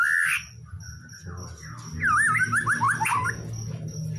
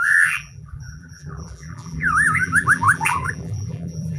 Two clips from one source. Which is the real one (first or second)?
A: first